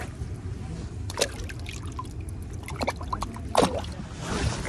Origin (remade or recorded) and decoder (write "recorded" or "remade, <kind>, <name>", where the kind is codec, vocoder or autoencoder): recorded